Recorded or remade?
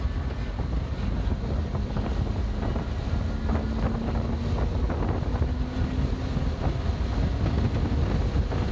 recorded